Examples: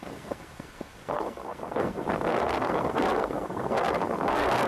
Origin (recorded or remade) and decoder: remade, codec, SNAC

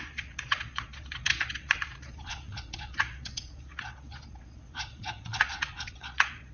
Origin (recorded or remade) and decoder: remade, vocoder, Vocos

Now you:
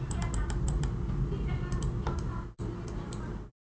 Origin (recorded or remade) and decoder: recorded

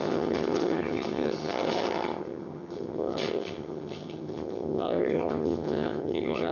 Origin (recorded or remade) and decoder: remade, vocoder, HiFi-GAN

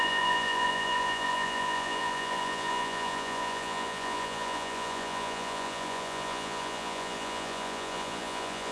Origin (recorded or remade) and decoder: remade, vocoder, Vocos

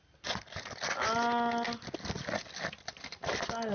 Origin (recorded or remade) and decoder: recorded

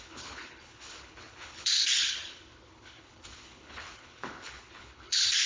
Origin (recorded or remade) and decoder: remade, codec, HILCodec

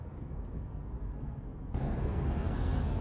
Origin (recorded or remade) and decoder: remade, codec, SNAC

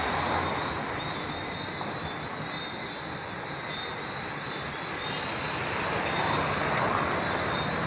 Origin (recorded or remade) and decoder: recorded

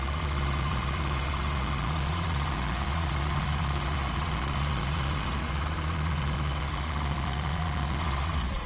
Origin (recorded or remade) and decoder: remade, vocoder, Vocos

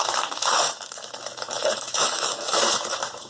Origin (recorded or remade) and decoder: remade, autoencoder, DAC-VAE